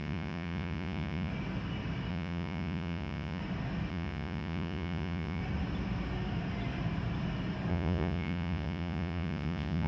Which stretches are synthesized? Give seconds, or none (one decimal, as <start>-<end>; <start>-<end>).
0.0-1.3; 2.1-3.4; 3.9-5.4; 7.7-9.9